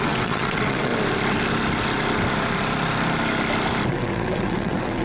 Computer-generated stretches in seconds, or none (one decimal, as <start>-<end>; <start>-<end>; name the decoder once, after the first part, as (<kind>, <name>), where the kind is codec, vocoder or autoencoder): 0.0-0.9 (vocoder, WaveNeXt); 3.9-5.0